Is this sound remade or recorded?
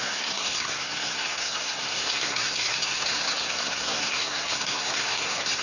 remade